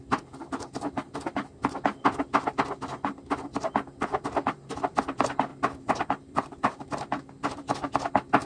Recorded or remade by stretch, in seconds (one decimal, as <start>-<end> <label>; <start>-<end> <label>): 0.0-5.5 recorded; 5.5-7.3 remade; 7.3-8.5 recorded